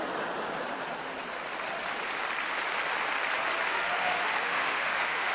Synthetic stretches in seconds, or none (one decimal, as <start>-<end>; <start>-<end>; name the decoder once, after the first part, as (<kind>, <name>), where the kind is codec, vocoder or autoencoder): 3.7-5.3 (autoencoder, DAC-VAE)